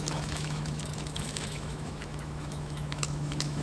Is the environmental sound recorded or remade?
remade